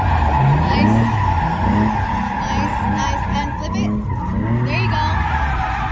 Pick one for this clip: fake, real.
real